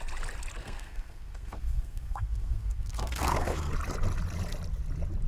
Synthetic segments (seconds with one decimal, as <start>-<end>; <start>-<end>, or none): 0.6-3.7